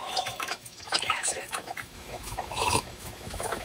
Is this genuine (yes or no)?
no